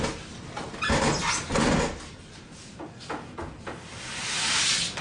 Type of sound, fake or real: real